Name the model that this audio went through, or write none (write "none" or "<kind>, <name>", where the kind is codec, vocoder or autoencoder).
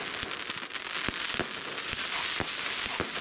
none